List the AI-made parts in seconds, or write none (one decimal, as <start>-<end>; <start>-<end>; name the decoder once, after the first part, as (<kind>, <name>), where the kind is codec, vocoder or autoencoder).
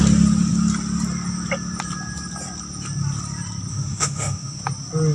3.7-4.6 (autoencoder, DAC-VAE)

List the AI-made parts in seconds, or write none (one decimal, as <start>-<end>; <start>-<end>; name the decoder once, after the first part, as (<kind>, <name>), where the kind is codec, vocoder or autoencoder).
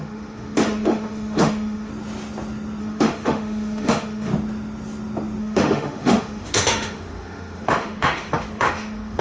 0.0-1.9 (autoencoder, DAC-VAE); 2.8-4.3; 5.4-9.2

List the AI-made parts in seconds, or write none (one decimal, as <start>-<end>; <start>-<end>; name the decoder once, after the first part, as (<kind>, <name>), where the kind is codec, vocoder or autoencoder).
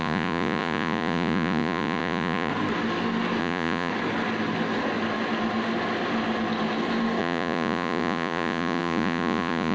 0.0-2.5 (vocoder, Vocos); 3.4-3.9; 7.2-9.7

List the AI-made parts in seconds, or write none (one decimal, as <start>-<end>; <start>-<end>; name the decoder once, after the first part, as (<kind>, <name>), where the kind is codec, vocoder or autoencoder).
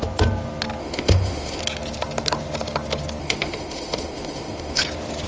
0.8-1.6 (autoencoder, DAC-VAE); 3.2-4.8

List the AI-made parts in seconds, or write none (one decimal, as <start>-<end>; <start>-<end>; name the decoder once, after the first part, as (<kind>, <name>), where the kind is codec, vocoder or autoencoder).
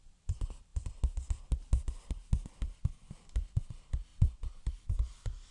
4.1-5.5 (vocoder, BigVGAN v2)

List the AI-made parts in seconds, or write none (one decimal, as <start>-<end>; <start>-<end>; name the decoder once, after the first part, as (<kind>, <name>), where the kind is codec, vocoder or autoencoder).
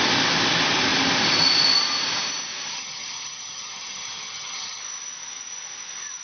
2.7-4.8 (vocoder, HiFi-GAN)